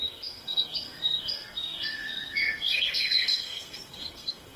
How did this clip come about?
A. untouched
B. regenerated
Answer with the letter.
B